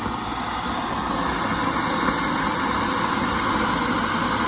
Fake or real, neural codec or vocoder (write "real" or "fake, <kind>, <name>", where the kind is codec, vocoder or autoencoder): real